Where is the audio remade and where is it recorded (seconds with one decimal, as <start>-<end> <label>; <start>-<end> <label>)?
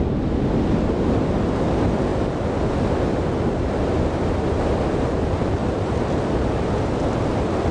0.0-7.7 recorded